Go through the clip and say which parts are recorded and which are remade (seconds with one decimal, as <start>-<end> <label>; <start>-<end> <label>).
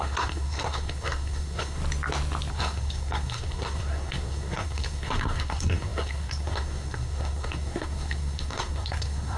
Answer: 0.0-1.8 remade; 1.8-2.5 recorded; 2.5-9.4 remade